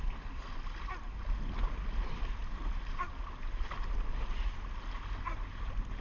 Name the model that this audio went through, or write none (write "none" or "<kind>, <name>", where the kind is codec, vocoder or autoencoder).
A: none